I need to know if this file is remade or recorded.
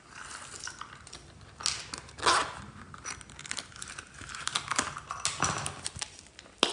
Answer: recorded